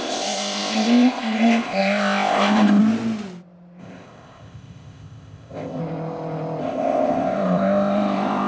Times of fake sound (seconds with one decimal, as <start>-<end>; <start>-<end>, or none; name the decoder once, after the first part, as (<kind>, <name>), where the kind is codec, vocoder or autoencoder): 0.0-2.8 (codec, ZipCodec); 3.8-5.8; 6.6-8.5